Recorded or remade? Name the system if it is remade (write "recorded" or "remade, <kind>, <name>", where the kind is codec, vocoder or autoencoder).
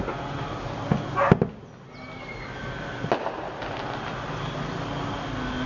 recorded